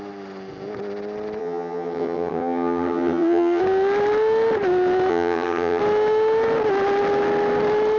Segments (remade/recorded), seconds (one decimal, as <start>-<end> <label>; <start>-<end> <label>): 0.0-1.4 recorded; 1.4-3.6 remade; 3.6-5.1 recorded; 5.1-5.8 remade; 5.8-8.0 recorded